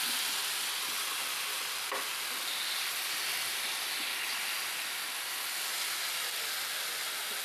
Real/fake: real